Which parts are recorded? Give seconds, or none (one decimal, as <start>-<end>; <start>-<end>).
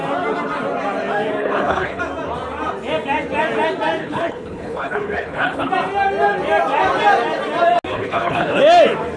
0.0-1.4; 2.0-4.0; 5.7-7.9; 8.6-9.2